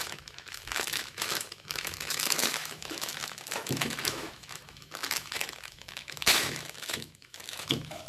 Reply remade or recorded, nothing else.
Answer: remade